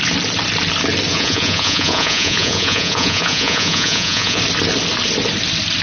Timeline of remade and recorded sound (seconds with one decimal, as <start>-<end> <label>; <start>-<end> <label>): 0.0-1.1 recorded; 1.1-4.4 remade; 4.4-5.8 recorded